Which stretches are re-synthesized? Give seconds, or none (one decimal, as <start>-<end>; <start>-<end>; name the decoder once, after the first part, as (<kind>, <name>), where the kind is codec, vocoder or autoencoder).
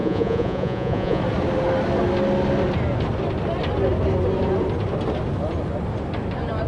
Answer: 0.0-1.2 (vocoder, Vocos)